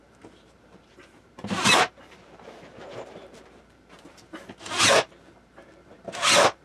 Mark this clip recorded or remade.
remade